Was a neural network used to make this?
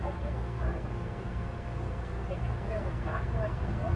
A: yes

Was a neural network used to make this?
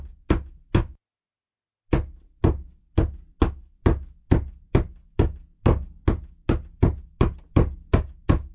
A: no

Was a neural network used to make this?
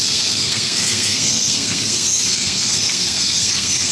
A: yes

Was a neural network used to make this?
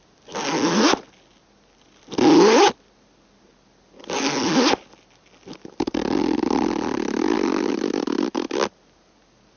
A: no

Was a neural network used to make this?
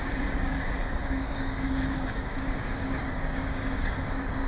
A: yes